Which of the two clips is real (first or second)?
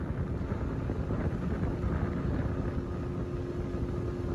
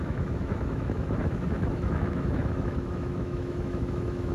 first